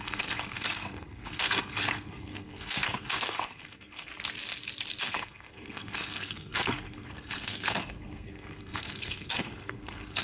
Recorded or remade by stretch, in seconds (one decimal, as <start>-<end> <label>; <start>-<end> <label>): 0.0-4.1 remade; 4.1-5.0 recorded; 5.0-10.2 remade